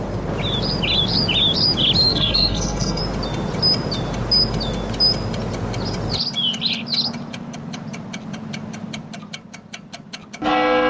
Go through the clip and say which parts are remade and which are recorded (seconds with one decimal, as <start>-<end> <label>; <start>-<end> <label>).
0.0-2.1 recorded; 2.1-3.0 remade; 3.0-10.9 recorded